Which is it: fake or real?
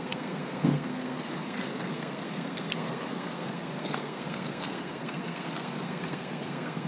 fake